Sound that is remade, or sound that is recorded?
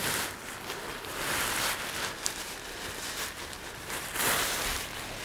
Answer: remade